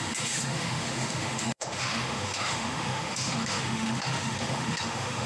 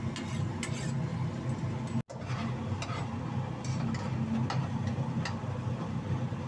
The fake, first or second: first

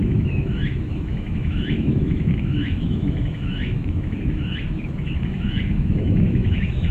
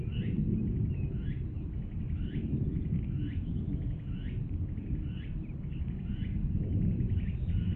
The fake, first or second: first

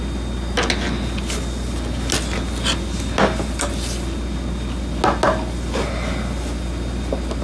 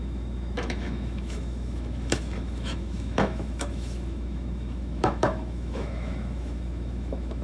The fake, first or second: second